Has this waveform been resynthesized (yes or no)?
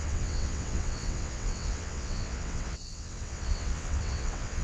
yes